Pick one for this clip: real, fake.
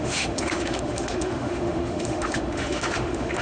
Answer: fake